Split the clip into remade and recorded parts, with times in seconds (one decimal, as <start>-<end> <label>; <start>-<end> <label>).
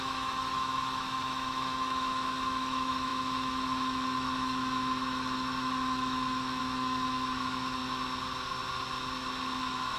0.0-7.8 remade; 7.8-9.6 recorded; 9.6-10.0 remade